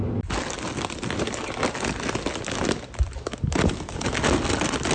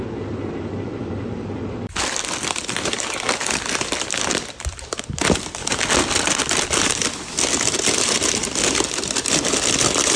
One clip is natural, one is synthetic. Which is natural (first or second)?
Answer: first